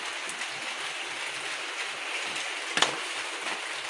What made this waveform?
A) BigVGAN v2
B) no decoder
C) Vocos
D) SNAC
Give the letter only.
B